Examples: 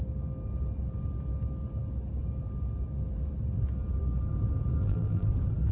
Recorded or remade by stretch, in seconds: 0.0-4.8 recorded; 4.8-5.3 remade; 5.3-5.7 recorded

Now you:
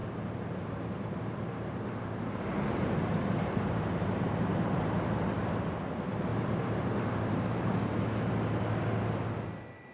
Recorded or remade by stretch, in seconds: 0.0-4.9 remade; 4.9-6.3 recorded; 6.3-8.0 remade; 8.0-9.9 recorded

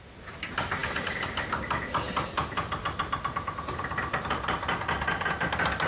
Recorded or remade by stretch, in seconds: 0.0-5.9 recorded

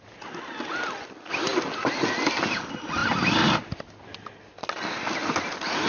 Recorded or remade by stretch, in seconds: 0.0-1.5 recorded; 1.5-2.4 remade; 2.4-3.0 recorded; 3.0-3.8 remade; 3.8-5.9 recorded

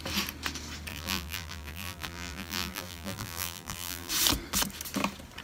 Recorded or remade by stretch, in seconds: 0.0-0.9 recorded; 0.9-4.1 remade; 4.1-5.4 recorded

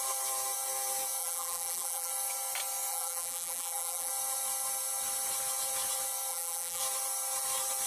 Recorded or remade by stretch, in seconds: 0.0-1.2 recorded; 1.2-2.1 remade; 2.1-2.9 recorded; 2.9-4.1 remade; 4.1-6.3 recorded; 6.3-6.8 remade; 6.8-7.9 recorded